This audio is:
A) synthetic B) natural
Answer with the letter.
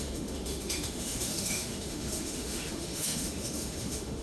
A